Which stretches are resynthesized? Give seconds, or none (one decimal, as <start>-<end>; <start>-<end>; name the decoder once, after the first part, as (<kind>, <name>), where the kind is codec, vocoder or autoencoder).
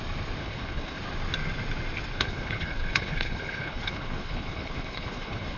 0.4-1.0 (codec, HILCodec); 2.1-5.6